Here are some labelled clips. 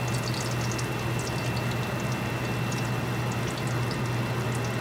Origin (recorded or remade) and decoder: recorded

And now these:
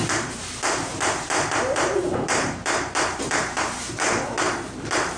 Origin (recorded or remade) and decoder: remade, vocoder, BigVGAN v2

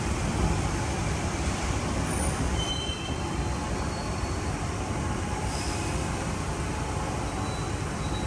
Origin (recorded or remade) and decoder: remade, vocoder, BigVGAN v2